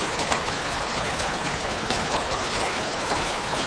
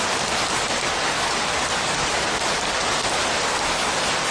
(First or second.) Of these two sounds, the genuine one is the second